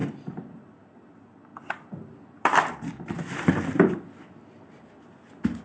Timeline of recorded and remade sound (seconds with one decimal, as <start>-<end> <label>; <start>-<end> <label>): 0.0-1.5 recorded; 1.5-4.7 remade; 4.7-5.6 recorded